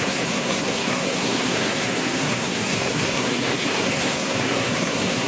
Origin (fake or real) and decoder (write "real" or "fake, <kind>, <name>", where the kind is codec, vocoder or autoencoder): fake, codec, SNAC